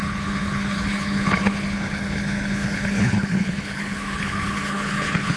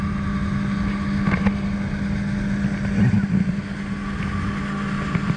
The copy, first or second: first